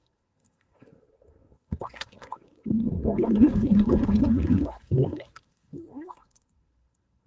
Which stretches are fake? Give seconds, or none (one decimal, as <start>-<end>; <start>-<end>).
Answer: 0.0-7.3